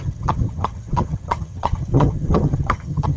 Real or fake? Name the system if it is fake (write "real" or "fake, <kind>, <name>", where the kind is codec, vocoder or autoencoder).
fake, vocoder, HiFi-GAN